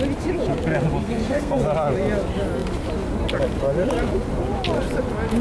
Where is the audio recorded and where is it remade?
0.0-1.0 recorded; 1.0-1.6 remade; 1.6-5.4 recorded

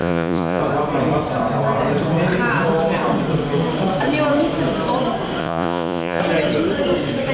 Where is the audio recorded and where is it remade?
0.0-0.6 remade; 0.6-5.4 recorded; 5.4-6.2 remade; 6.2-7.3 recorded

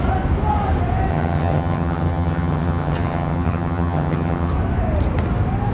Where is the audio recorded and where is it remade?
0.0-1.1 recorded; 1.1-4.5 remade; 4.5-5.7 recorded

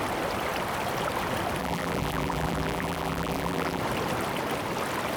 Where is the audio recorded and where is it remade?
0.0-1.6 recorded; 1.6-3.8 remade; 3.8-5.2 recorded

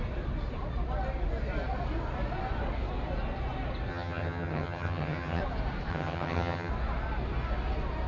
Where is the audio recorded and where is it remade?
0.0-3.9 recorded; 3.9-5.4 remade; 5.4-5.9 recorded; 5.9-6.7 remade; 6.7-8.1 recorded

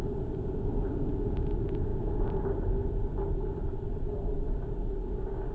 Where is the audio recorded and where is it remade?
0.0-5.5 recorded